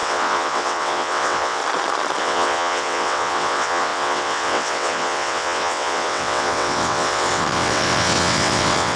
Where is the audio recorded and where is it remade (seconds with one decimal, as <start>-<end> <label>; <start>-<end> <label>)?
0.0-1.6 remade; 1.6-2.2 recorded; 2.2-9.0 remade